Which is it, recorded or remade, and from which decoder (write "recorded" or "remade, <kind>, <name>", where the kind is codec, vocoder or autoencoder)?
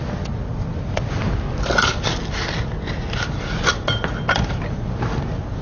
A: recorded